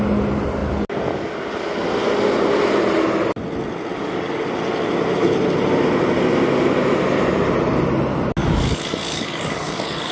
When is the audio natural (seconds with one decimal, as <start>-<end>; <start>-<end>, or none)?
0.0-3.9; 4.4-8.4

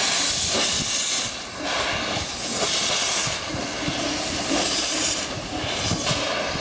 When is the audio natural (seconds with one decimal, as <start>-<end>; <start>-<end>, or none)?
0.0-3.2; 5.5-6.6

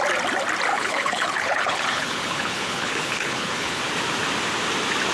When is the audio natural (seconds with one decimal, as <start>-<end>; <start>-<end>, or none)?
0.0-0.7; 3.8-5.1

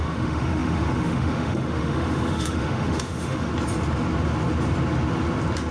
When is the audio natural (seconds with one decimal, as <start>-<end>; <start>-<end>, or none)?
3.5-5.7